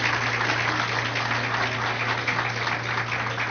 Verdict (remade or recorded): recorded